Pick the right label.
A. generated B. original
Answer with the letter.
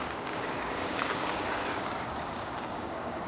A